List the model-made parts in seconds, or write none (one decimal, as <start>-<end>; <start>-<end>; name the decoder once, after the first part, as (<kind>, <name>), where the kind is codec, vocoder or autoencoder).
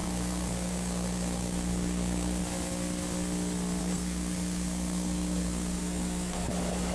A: 0.0-2.4 (codec, SNAC); 3.8-6.5